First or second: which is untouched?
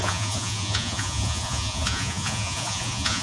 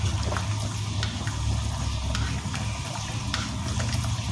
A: second